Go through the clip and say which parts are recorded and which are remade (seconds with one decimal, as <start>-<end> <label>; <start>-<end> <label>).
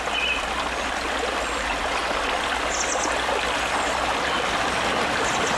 0.0-5.6 recorded